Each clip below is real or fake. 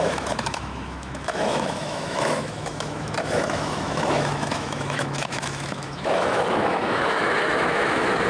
fake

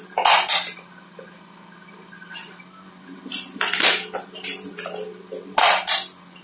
real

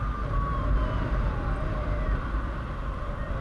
real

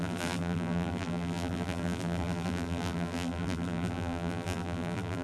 fake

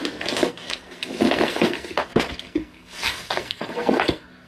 fake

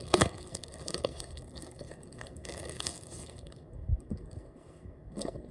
fake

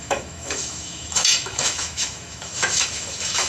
fake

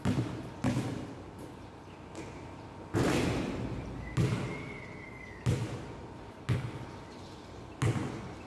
real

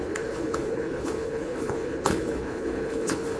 fake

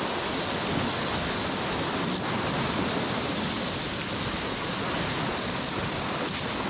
real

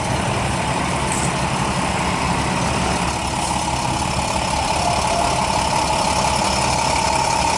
real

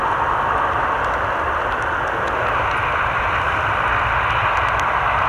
real